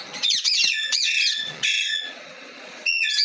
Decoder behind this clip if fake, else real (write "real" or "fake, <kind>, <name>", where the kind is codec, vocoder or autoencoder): fake, vocoder, Vocos